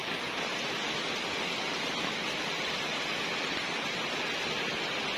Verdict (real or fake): real